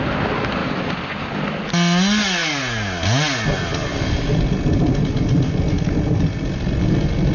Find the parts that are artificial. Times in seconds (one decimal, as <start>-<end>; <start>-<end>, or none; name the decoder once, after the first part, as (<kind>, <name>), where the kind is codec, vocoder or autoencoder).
none